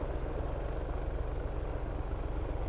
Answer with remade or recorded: recorded